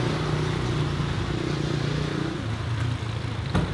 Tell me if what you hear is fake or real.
real